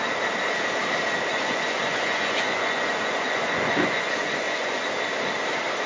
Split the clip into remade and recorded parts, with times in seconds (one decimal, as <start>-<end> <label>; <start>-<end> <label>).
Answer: 0.0-1.3 recorded; 1.3-4.8 remade; 4.8-5.9 recorded

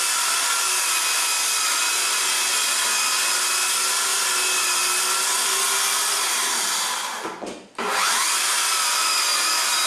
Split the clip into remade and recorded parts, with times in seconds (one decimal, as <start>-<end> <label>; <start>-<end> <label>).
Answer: 0.0-9.9 recorded

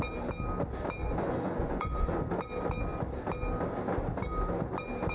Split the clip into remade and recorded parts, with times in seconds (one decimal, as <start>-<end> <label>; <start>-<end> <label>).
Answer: 0.0-1.0 recorded; 1.0-2.3 remade; 2.3-5.1 recorded

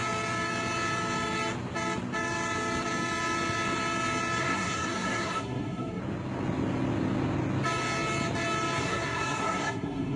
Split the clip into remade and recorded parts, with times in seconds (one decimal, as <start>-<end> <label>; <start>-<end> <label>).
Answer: 0.0-4.4 recorded; 4.4-6.0 remade; 6.0-8.8 recorded; 8.8-10.2 remade

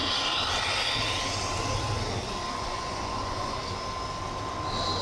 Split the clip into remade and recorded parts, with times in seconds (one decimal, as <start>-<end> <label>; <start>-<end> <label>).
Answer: 0.0-2.5 recorded; 2.5-3.6 remade; 3.6-5.0 recorded